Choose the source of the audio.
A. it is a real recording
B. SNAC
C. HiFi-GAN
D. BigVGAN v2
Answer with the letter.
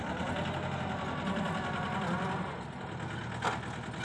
A